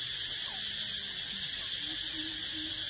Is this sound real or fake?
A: real